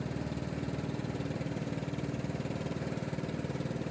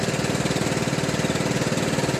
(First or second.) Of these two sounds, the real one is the second